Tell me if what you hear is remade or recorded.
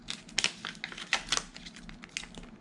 recorded